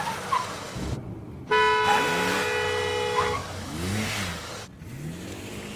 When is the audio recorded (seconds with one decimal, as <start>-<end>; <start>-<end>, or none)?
0.0-3.4; 4.6-5.8